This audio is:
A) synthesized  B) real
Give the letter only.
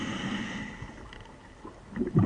B